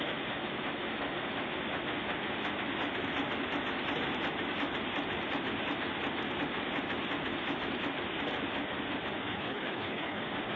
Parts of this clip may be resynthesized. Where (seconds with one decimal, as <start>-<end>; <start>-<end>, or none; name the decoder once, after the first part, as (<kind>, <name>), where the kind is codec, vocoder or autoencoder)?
9.3-10.2 (codec, HILCodec)